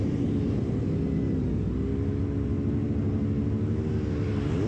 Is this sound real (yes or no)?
yes